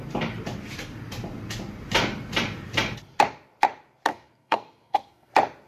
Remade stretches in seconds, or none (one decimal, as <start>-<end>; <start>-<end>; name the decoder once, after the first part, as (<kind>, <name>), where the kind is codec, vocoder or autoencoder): 4.1-5.3 (codec, SNAC)